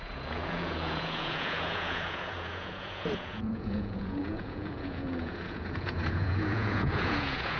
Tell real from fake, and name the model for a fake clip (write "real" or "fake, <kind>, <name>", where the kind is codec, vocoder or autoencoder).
fake, vocoder, Vocos